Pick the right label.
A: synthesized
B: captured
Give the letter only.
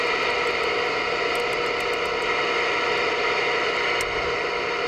B